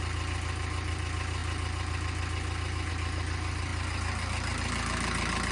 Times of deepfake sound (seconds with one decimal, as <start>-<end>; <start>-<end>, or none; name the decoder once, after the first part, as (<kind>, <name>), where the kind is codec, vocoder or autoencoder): none